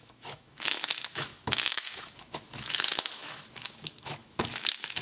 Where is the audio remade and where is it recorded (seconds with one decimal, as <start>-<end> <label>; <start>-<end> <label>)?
0.0-5.0 remade